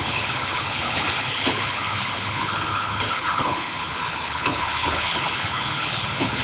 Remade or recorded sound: remade